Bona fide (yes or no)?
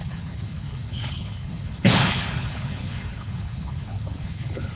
no